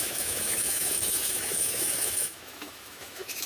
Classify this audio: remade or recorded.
remade